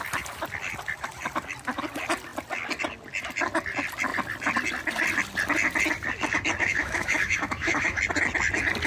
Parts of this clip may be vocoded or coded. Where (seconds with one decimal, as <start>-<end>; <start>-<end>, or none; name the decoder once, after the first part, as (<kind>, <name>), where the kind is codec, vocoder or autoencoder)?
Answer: 6.6-8.0 (autoencoder, DAC-VAE)